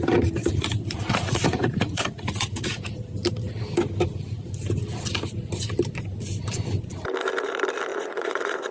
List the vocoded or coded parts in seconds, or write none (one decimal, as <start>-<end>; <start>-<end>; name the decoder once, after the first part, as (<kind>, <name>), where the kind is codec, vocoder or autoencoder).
0.4-2.8 (vocoder, Vocos); 7.9-8.7